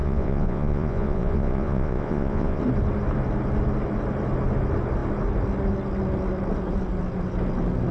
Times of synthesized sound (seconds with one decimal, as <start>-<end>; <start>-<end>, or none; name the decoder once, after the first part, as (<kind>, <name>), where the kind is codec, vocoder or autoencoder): 0.0-2.6 (vocoder, Vocos)